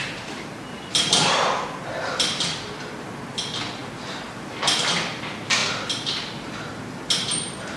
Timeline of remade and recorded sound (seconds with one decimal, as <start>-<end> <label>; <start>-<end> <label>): 0.0-7.8 remade